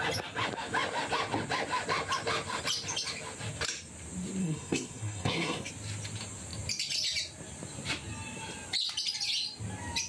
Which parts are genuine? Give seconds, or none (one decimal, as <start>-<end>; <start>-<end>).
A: 0.0-4.4; 5.7-10.1